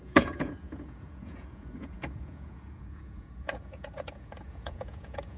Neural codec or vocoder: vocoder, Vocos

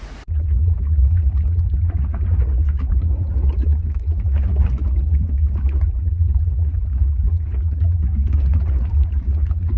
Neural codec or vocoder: vocoder, Vocos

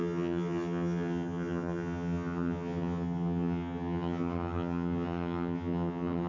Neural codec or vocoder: vocoder, HiFi-GAN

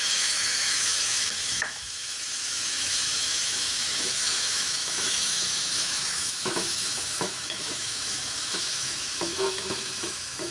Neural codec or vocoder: autoencoder, DAC-VAE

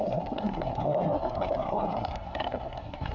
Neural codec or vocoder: codec, SNAC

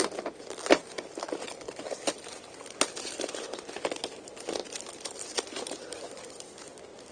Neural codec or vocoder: none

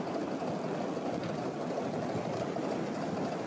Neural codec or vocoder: none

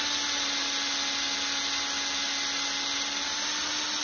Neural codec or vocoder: none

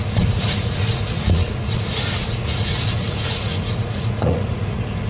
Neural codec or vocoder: vocoder, Vocos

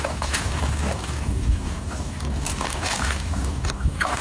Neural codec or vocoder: codec, DAC